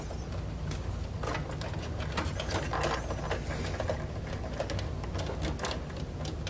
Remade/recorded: recorded